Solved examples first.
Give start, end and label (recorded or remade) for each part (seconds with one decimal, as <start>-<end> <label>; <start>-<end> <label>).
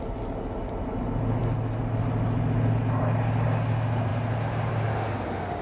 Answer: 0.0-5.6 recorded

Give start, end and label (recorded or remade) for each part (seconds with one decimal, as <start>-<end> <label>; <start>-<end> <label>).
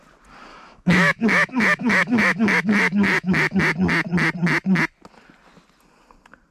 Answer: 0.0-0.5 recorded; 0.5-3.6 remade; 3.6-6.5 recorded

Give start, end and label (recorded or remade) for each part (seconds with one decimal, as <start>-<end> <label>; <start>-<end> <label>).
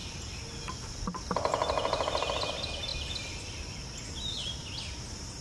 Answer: 0.0-5.4 recorded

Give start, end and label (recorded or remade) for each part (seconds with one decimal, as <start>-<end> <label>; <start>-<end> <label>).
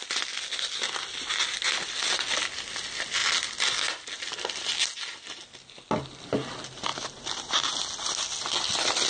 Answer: 0.0-6.9 recorded; 6.9-7.7 remade; 7.7-9.1 recorded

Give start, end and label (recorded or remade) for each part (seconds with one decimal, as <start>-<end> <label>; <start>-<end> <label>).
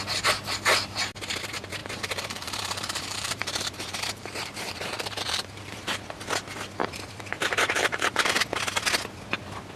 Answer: 0.0-1.8 recorded; 1.8-5.8 remade; 5.8-6.8 recorded; 6.8-8.4 remade; 8.4-9.8 recorded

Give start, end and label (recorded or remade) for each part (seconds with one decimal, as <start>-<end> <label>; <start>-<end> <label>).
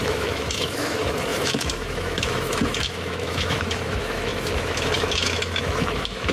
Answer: 0.0-6.3 remade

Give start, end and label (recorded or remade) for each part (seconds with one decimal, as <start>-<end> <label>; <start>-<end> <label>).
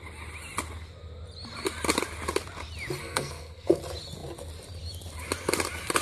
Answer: 0.0-3.0 recorded; 3.0-3.8 remade; 3.8-6.0 recorded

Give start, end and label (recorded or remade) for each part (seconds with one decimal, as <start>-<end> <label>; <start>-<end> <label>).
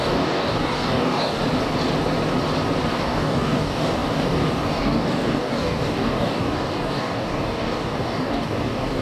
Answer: 0.0-1.4 remade; 1.4-2.9 recorded; 2.9-9.0 remade